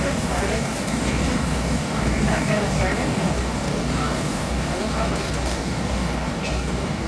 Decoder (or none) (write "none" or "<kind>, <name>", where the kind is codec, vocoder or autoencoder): codec, DAC